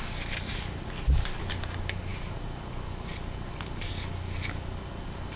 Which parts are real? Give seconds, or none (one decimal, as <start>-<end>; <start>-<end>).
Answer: 0.0-5.4